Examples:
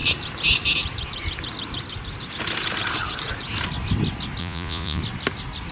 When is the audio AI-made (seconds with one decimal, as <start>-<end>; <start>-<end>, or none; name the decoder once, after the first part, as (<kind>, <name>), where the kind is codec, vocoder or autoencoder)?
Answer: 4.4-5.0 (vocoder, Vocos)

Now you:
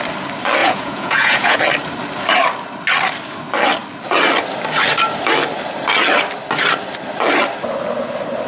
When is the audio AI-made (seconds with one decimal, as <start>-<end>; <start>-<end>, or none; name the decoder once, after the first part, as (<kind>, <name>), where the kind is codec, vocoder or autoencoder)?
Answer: 0.6-1.6 (vocoder, Vocos)

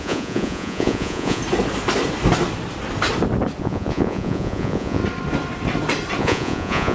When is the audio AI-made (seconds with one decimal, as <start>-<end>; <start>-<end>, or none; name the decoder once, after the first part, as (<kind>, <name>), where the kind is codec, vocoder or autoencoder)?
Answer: 0.0-1.4 (vocoder, Vocos); 3.6-5.0; 6.2-6.9